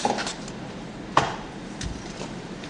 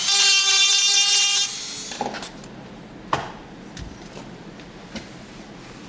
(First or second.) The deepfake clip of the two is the first